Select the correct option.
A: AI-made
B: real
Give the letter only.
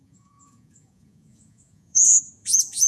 A